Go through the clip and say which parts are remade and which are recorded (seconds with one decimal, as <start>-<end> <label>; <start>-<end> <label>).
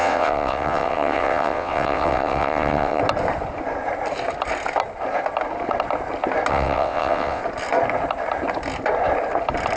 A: 0.0-3.0 remade; 3.0-6.5 recorded; 6.5-7.4 remade; 7.4-9.8 recorded